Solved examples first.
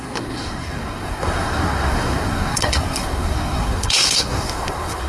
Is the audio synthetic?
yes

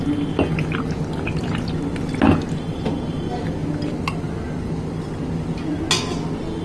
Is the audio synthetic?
no